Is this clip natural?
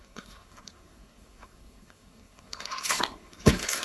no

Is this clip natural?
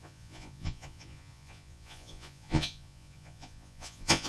no